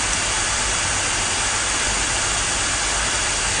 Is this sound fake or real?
real